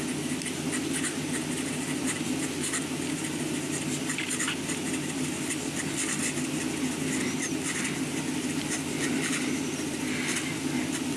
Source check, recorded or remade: recorded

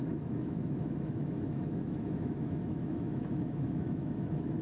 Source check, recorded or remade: remade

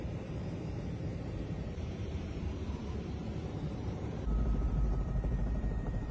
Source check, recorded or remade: remade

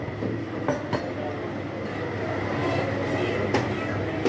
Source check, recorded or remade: recorded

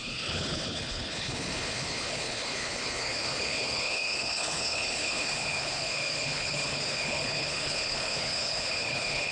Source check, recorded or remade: remade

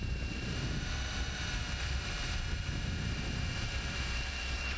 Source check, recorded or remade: remade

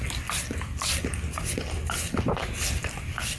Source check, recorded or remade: recorded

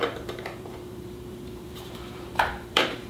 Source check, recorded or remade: remade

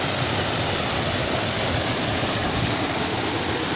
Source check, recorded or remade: recorded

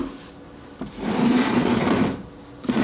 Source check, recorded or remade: recorded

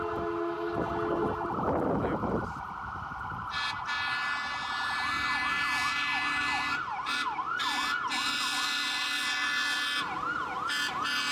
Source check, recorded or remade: recorded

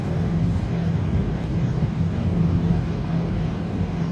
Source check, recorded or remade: remade